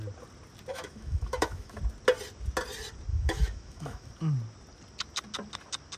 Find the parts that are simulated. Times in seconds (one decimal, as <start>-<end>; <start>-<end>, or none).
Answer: 0.7-1.8; 3.1-4.1